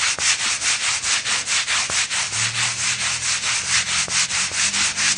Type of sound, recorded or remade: recorded